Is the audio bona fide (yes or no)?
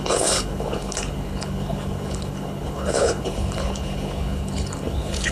no